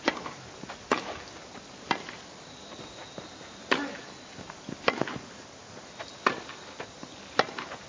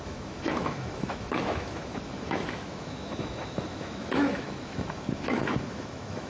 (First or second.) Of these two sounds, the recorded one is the first